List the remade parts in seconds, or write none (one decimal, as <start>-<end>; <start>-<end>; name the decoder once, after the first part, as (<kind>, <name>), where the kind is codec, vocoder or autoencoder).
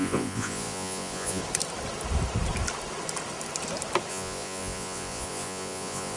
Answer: 0.0-1.4 (vocoder, Vocos); 4.1-6.2